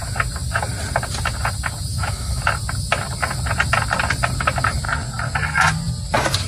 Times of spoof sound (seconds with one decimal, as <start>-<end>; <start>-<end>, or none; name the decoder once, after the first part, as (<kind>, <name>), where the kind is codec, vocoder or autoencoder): 1.9-2.4 (autoencoder, DAC-VAE)